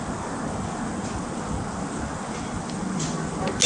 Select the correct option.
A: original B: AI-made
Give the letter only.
A